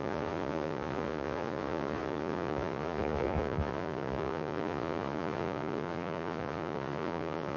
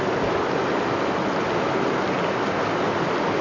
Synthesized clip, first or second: first